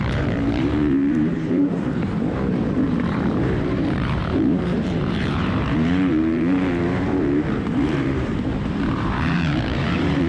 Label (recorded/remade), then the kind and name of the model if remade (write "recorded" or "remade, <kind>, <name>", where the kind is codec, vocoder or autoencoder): remade, vocoder, BigVGAN v2